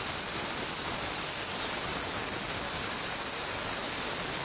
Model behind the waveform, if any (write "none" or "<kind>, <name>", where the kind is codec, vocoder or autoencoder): none